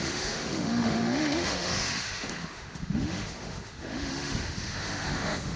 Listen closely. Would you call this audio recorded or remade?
remade